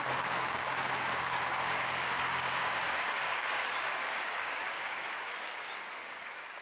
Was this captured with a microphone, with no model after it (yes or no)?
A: no